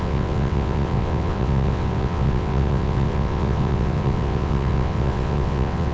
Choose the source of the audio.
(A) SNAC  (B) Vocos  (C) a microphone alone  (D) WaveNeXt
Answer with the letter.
D